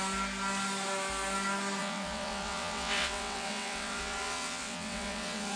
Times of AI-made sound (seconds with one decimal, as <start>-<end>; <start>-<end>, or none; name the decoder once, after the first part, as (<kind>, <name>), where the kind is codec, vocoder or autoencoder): 1.8-5.6 (vocoder, WaveNeXt)